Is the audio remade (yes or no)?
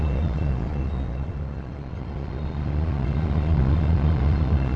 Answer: yes